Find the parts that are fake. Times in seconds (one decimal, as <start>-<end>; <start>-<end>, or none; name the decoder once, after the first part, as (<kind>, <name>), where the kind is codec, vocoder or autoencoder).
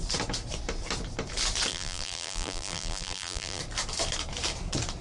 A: 1.7-3.6 (vocoder, BigVGAN v2)